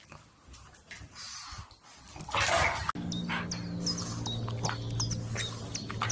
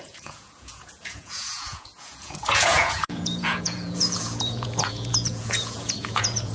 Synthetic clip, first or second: second